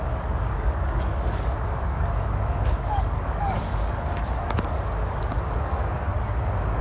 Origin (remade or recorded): remade